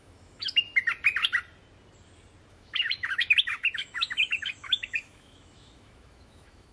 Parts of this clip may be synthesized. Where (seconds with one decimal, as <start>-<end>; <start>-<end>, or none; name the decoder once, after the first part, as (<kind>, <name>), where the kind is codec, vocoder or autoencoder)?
0.0-0.7 (autoencoder, DAC-VAE); 2.5-6.7